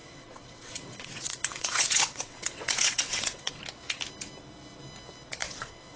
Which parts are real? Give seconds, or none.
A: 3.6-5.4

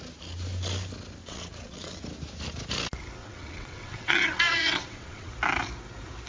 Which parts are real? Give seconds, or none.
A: 0.0-1.2; 2.0-3.2; 5.3-6.3

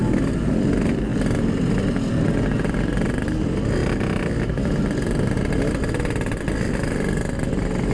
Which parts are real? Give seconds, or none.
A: 0.0-7.9

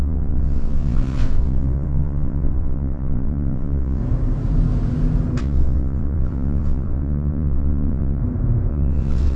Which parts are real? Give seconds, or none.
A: 4.0-5.4; 8.2-8.7

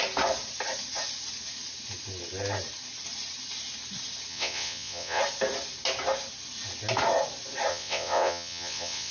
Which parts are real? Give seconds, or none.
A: 0.0-4.3; 5.2-7.7

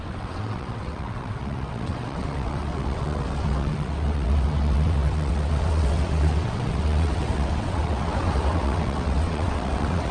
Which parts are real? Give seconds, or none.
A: none

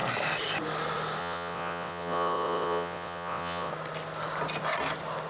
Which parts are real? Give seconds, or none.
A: 0.0-1.2; 3.7-5.3

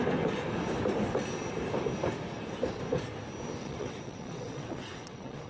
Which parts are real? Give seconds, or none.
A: 0.0-3.6